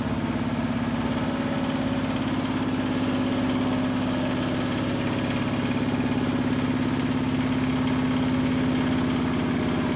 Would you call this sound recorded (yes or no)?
yes